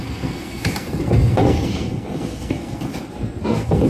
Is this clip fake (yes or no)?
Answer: yes